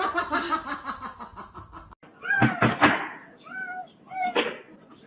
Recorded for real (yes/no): yes